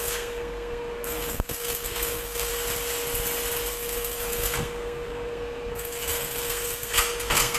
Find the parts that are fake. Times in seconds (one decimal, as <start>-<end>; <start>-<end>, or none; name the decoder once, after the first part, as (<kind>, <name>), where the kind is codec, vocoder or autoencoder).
0.0-2.5 (codec, SNAC); 3.7-7.6